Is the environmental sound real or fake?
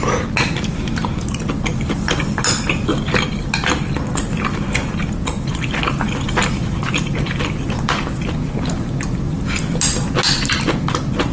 real